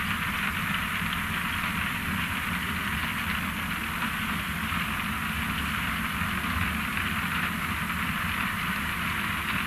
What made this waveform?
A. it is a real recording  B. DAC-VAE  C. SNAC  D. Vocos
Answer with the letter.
A